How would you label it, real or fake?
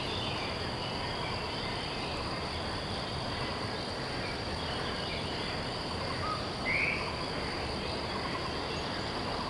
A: real